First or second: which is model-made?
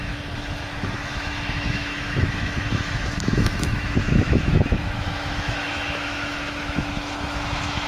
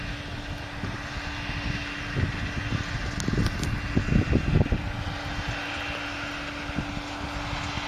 first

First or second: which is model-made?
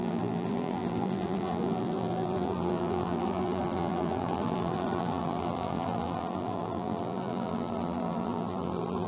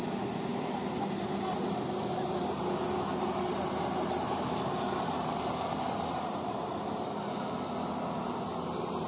first